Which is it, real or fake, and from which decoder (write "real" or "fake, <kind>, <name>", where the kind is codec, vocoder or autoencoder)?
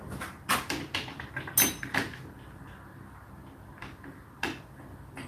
real